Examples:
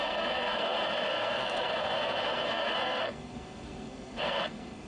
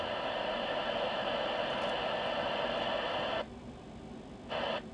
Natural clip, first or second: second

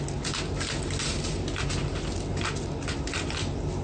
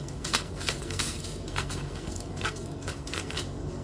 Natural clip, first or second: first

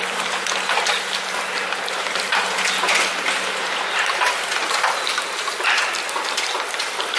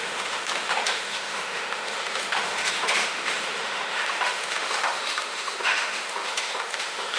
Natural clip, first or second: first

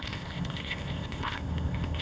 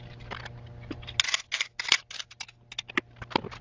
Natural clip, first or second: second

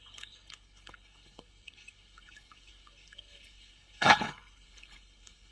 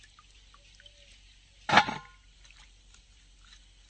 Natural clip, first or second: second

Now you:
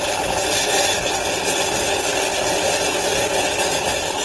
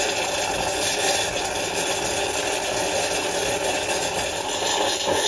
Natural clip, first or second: second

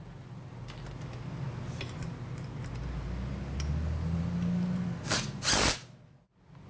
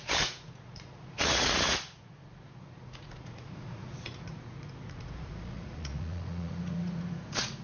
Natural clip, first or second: first